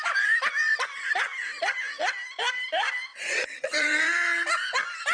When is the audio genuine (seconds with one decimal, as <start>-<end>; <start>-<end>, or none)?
0.0-3.1; 4.0-5.1